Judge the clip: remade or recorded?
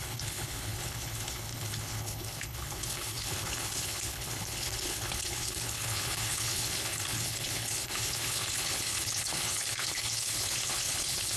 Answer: remade